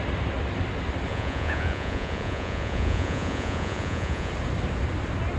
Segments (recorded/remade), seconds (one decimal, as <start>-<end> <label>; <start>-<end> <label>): 0.0-1.1 recorded; 1.1-4.3 remade; 4.3-5.4 recorded